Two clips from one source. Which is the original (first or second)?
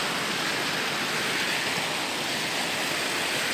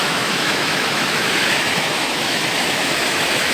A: first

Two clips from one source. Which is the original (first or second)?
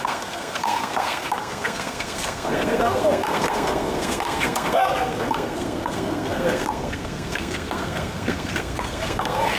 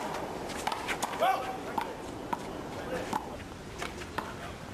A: second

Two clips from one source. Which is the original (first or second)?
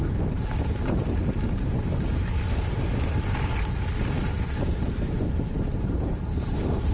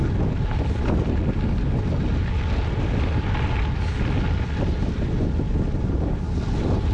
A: second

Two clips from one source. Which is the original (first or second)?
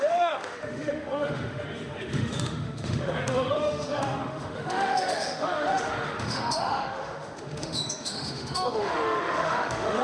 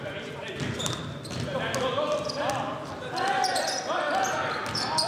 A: second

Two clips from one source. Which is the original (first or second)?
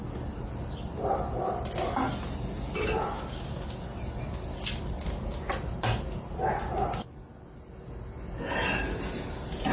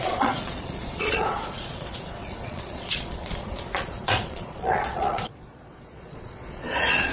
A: first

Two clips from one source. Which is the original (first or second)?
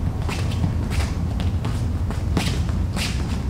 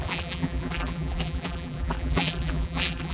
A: first